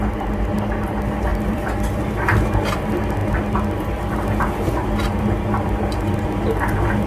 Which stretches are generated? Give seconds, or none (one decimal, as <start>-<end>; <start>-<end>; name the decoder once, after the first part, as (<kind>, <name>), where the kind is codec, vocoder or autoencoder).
1.3-2.0 (vocoder, BigVGAN v2)